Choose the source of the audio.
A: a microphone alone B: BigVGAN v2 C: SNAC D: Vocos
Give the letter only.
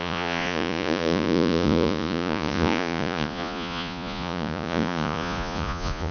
D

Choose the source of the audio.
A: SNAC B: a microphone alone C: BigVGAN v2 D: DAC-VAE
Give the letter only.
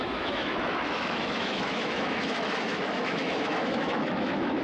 D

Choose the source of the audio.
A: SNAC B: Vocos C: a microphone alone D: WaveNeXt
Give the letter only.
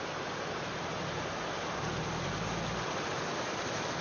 C